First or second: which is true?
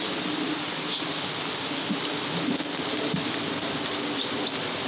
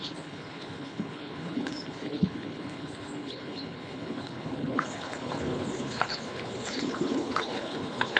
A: first